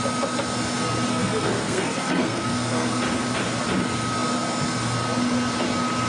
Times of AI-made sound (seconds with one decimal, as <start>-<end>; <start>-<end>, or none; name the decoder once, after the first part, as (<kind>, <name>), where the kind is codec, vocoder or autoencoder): 1.1-3.0 (codec, SNAC)